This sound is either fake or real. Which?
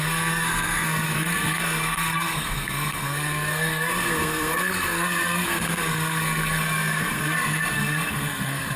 fake